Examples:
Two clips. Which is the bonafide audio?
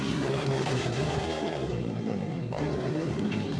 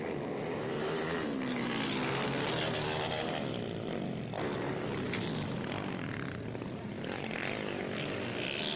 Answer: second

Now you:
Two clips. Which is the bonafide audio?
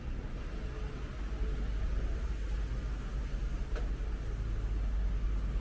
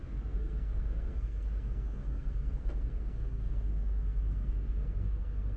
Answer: first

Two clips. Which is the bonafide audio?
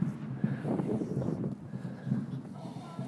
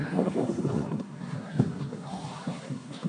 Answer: first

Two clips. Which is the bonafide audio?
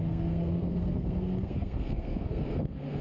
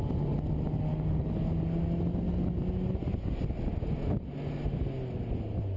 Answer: second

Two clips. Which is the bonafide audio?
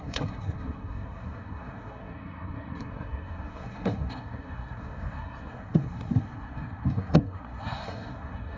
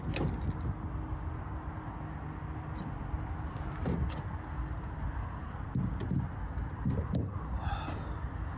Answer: second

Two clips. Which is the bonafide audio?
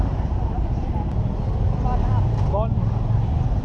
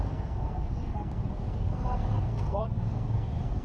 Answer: first